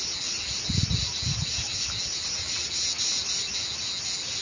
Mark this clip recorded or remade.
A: recorded